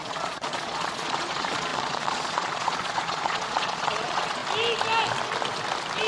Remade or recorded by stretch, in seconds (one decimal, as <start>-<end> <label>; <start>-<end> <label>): 0.0-4.4 remade; 4.4-6.1 recorded